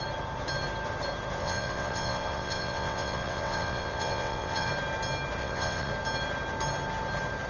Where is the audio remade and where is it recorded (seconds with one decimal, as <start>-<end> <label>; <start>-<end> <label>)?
0.0-1.4 recorded; 1.4-4.7 remade; 4.7-5.4 recorded; 5.4-5.9 remade; 5.9-7.5 recorded